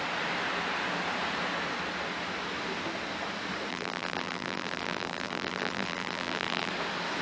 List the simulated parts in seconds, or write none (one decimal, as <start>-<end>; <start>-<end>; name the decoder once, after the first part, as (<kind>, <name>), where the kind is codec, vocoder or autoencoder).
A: 3.7-6.7 (vocoder, BigVGAN v2)